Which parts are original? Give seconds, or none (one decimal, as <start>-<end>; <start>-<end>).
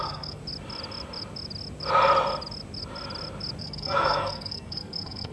0.4-3.6